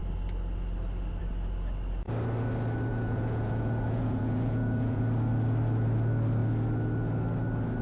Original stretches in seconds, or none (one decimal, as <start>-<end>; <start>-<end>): 0.0-2.9; 5.0-7.8